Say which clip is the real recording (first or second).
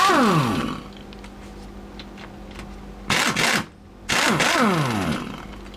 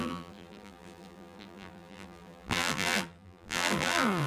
first